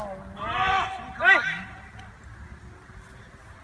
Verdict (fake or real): real